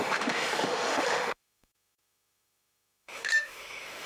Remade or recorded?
remade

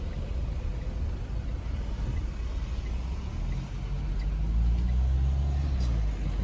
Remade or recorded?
recorded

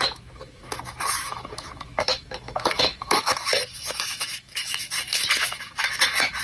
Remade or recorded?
remade